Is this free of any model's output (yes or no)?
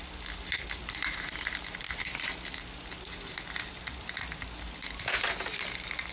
yes